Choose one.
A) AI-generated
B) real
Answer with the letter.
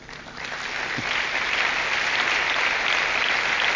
B